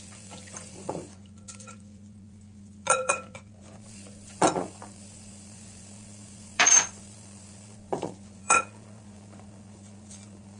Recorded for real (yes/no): no